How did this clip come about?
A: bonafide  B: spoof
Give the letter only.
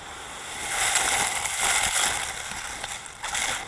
A